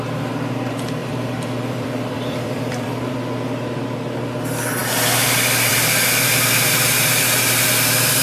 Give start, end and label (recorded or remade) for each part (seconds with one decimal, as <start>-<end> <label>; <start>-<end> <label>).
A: 0.0-1.0 recorded; 1.0-3.1 remade; 3.1-8.2 recorded